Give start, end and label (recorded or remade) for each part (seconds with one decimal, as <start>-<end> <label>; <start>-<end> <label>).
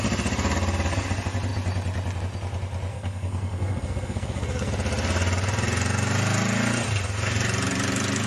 0.0-2.9 recorded; 2.9-4.7 remade; 4.7-8.3 recorded